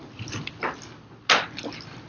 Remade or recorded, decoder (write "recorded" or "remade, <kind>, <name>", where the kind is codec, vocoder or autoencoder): recorded